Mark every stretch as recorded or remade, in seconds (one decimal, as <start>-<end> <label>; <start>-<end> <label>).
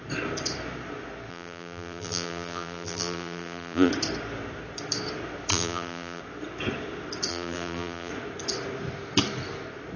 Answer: 0.0-1.3 recorded; 1.3-3.9 remade; 3.9-5.5 recorded; 5.5-6.2 remade; 6.2-7.3 recorded; 7.3-8.1 remade; 8.1-10.0 recorded